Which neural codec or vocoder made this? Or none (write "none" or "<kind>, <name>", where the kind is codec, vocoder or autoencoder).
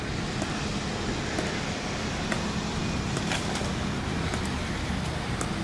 none